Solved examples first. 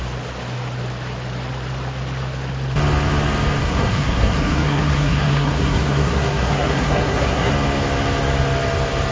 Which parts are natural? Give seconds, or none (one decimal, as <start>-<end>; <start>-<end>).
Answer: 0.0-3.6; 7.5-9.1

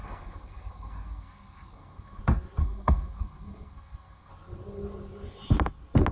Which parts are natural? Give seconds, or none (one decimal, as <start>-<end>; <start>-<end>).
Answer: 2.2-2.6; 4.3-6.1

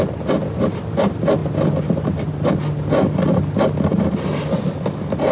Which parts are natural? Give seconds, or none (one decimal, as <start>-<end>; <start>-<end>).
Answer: 0.0-5.3